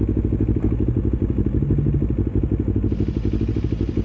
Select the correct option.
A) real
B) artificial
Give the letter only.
A